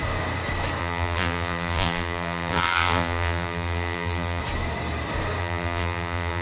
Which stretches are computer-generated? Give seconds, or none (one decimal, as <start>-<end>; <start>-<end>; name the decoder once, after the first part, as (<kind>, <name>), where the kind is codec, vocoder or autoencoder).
0.8-4.4 (vocoder, BigVGAN v2); 5.4-6.4